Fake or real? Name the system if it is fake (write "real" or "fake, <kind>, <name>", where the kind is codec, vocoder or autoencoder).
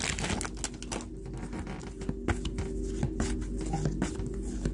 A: real